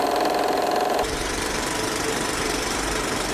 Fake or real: fake